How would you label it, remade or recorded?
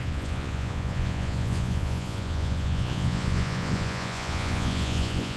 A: remade